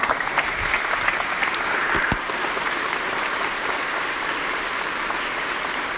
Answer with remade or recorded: remade